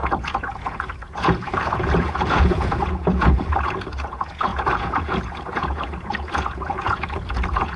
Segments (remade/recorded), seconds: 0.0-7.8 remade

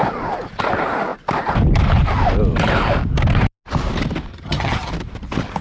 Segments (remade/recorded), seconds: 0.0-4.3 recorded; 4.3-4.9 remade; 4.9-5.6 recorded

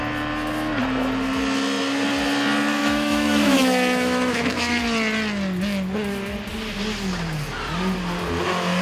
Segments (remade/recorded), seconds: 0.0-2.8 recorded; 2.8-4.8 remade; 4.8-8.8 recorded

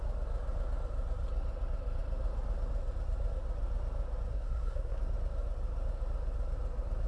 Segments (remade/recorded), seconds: 0.0-4.3 recorded; 4.3-5.0 remade; 5.0-7.1 recorded

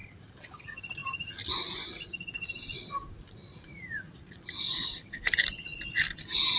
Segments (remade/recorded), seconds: 0.0-3.5 recorded; 3.5-4.4 remade; 4.4-6.6 recorded

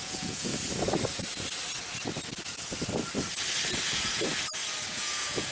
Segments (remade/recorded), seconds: 0.0-0.5 remade; 0.5-3.8 recorded; 3.8-4.3 remade; 4.3-4.9 recorded; 4.9-5.5 remade

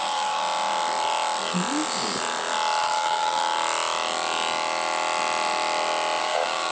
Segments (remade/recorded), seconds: 0.0-0.4 remade; 0.4-2.8 recorded; 2.8-3.4 remade; 3.4-6.2 recorded; 6.2-6.7 remade